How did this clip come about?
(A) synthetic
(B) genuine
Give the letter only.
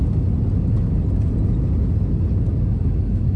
B